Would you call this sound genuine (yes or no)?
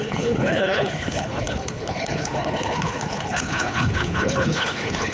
no